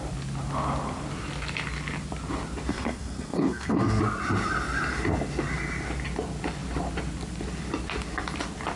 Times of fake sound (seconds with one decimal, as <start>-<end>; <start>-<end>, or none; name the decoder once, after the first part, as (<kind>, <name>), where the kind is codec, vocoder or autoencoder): 2.7-4.0 (codec, SNAC)